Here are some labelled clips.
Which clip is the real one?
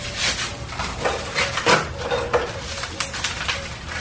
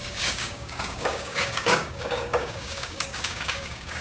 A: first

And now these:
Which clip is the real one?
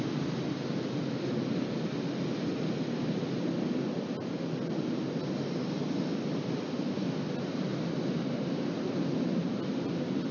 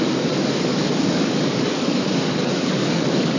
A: first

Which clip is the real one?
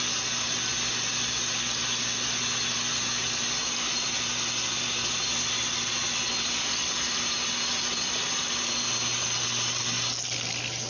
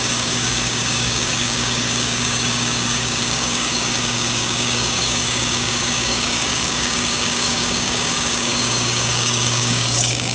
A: first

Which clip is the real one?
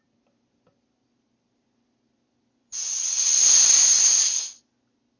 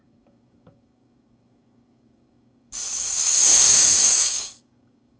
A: first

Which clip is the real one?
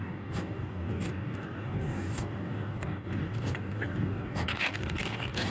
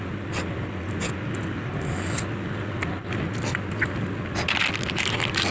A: second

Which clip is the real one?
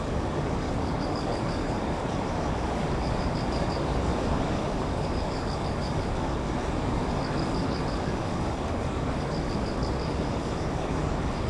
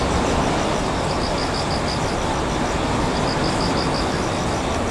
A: second